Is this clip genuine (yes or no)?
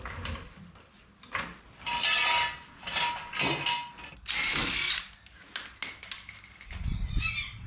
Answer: yes